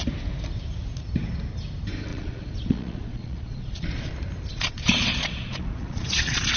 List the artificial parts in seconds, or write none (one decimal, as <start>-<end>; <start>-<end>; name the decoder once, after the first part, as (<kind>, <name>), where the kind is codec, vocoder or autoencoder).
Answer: 2.1-4.1 (vocoder, Vocos); 4.5-6.6